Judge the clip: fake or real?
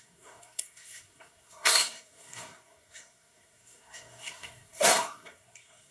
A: fake